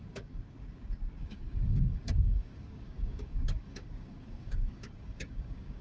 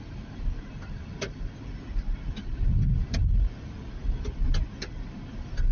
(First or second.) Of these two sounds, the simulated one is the first